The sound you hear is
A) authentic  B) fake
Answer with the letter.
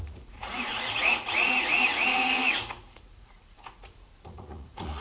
B